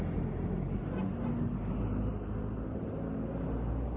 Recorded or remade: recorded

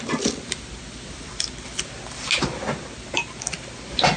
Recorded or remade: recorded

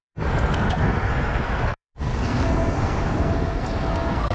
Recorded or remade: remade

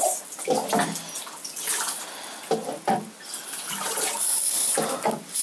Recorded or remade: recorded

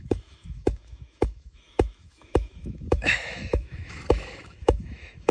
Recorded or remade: remade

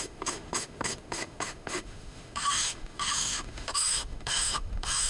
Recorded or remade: remade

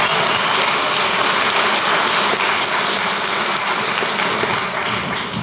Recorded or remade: recorded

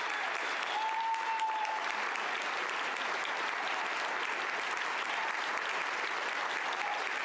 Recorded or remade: recorded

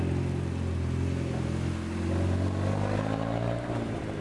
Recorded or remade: recorded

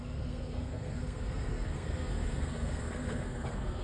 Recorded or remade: remade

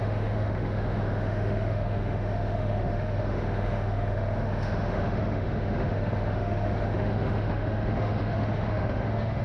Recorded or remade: remade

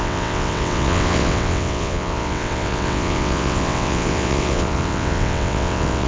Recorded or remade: remade